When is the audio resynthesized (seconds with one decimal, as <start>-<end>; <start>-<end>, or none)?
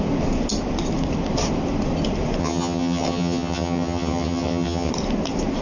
2.4-4.9